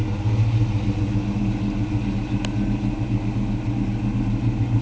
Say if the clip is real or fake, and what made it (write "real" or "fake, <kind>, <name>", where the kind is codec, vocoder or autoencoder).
real